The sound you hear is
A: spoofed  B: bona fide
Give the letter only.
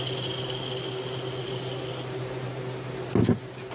B